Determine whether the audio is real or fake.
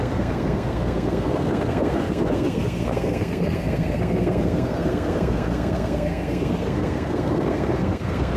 fake